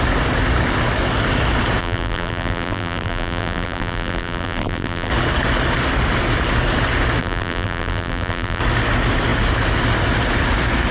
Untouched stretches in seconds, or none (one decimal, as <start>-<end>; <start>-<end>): 0.0-1.8; 5.1-7.2; 8.6-10.9